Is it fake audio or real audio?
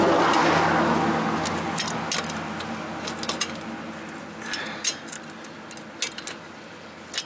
real